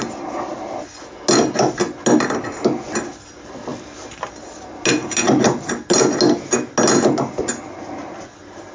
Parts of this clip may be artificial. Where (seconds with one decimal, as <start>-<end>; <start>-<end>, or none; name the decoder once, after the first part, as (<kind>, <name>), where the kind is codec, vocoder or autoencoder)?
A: none